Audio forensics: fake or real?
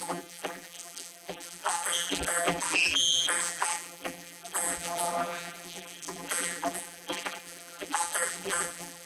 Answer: fake